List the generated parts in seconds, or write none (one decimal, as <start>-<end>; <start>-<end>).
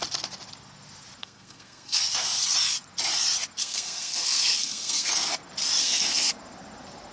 1.2-2.0; 3.6-5.1; 5.8-6.3